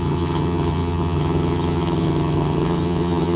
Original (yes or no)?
no